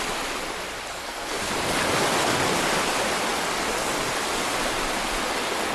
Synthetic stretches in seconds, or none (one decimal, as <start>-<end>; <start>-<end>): 0.9-1.5